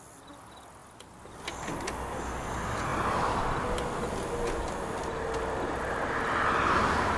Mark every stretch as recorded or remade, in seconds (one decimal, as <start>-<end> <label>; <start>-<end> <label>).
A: 0.0-7.2 recorded

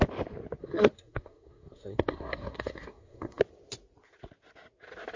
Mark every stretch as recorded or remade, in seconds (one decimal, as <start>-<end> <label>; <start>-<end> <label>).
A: 0.0-0.6 recorded; 0.6-3.4 remade; 3.4-5.2 recorded